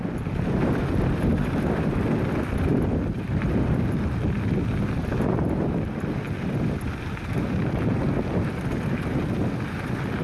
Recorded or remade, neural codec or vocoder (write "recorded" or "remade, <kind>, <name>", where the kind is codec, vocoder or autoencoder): recorded